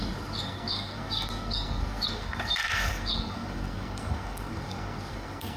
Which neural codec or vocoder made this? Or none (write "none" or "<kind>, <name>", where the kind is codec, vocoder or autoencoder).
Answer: codec, SNAC